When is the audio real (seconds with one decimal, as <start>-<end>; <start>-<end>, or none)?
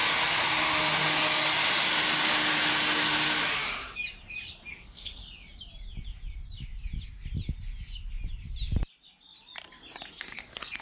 0.0-4.7; 5.2-10.1